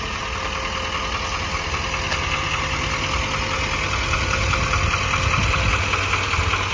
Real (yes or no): yes